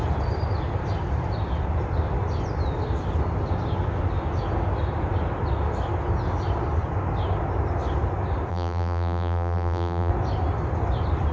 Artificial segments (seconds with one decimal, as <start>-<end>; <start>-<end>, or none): 8.5-10.1